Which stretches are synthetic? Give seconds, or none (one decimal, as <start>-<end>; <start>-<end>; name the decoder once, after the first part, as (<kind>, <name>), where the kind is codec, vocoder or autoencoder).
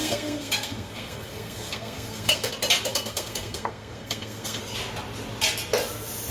0.0-2.5 (codec, SNAC); 2.9-4.6